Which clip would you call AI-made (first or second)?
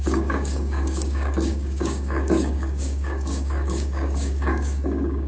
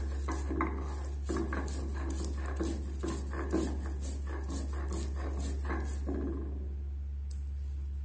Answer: first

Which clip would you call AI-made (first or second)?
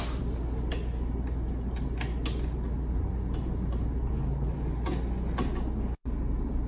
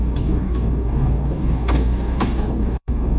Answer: second